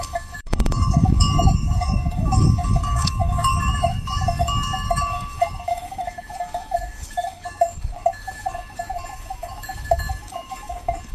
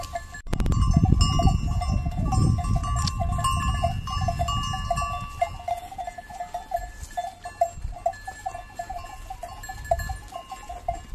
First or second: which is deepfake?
first